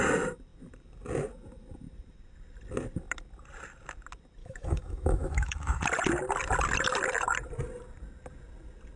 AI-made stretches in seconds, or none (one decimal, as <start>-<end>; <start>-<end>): 4.4-5.8